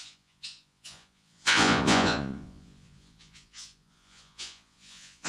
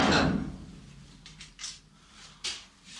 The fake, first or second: first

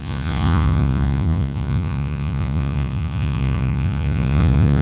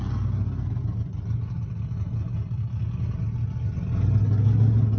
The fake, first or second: first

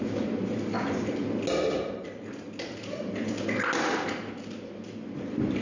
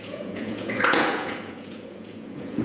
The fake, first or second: second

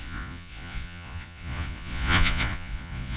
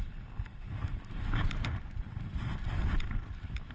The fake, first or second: first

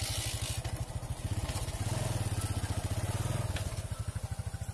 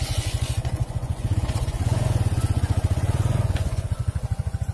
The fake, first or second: second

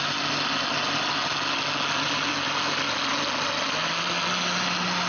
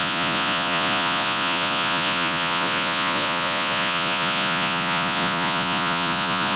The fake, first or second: second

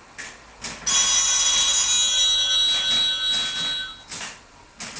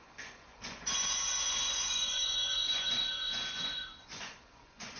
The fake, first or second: second